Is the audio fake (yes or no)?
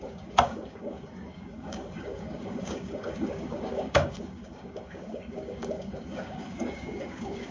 yes